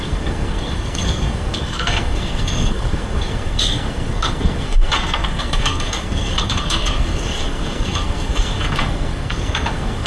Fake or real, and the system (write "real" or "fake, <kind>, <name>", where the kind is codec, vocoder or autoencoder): fake, codec, SNAC